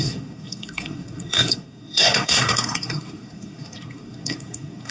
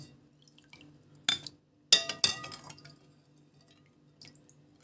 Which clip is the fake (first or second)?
first